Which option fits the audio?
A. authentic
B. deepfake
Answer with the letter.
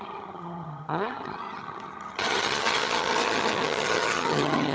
B